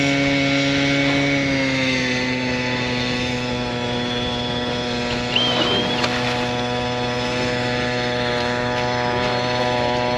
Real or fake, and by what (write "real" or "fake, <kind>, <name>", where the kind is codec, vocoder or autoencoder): real